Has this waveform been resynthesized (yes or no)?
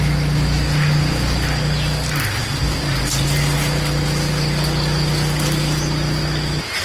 no